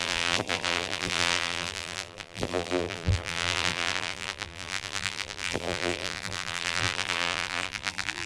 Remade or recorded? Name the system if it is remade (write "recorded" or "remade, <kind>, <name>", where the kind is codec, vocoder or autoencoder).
remade, vocoder, BigVGAN v2